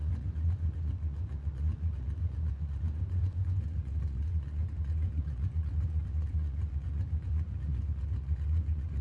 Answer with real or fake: fake